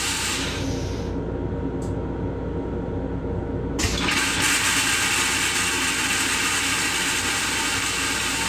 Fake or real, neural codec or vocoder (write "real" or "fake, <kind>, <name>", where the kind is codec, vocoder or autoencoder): real